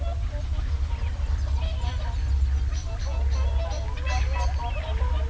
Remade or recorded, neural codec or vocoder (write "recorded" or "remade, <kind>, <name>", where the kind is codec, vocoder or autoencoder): recorded